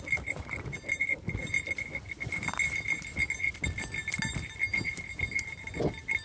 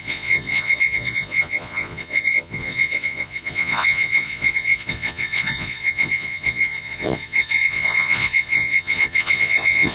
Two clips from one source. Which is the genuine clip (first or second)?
first